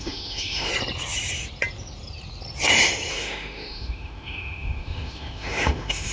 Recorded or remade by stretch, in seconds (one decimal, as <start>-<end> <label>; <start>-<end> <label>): 0.0-0.7 remade; 0.7-3.1 recorded; 3.1-6.1 remade